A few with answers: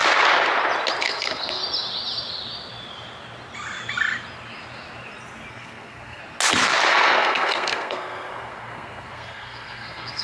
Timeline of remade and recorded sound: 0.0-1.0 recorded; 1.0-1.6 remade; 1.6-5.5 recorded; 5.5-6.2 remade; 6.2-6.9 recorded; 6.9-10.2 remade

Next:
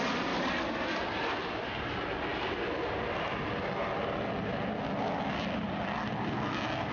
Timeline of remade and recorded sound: 0.0-6.9 recorded